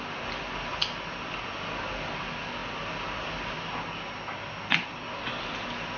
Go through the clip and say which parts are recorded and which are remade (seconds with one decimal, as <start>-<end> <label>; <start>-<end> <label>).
0.0-6.0 recorded